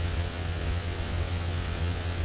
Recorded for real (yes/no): no